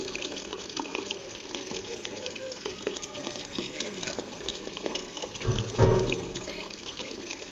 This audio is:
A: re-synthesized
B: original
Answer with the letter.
A